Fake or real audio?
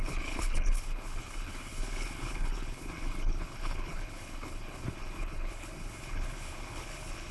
fake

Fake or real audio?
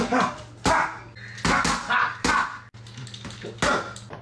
real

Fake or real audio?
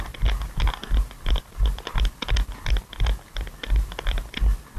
real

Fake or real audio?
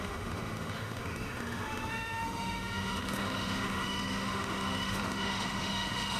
fake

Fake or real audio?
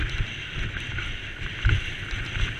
real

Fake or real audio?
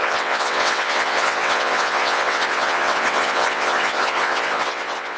fake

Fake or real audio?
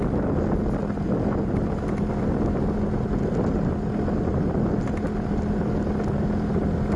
real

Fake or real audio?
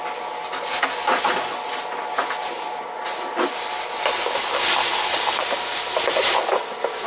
real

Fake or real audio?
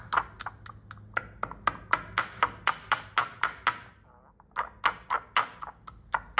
real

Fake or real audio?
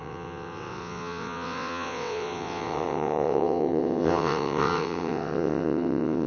fake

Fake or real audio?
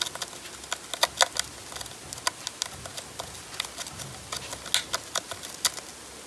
real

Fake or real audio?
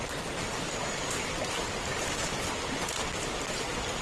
real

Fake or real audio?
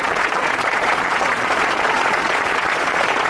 fake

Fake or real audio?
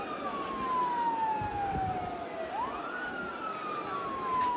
real